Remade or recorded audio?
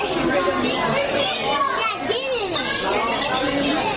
recorded